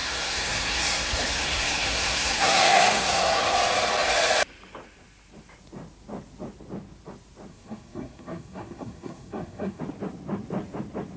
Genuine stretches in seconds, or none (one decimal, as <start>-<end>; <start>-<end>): 3.4-7.5; 9.8-11.2